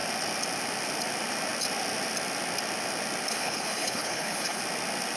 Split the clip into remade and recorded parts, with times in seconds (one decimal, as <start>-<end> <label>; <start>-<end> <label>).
0.0-3.3 recorded; 3.3-4.6 remade; 4.6-5.2 recorded